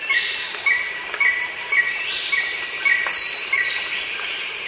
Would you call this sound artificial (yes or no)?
yes